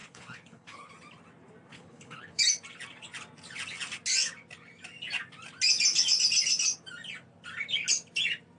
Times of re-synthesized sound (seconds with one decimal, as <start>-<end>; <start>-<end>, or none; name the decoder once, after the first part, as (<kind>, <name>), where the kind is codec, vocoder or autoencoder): 0.0-0.9 (codec, HILCodec); 1.7-2.4